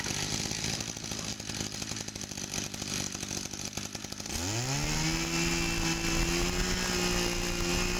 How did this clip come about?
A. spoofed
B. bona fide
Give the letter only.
B